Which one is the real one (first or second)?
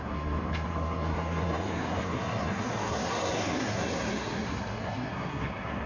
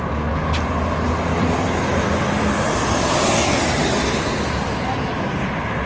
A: second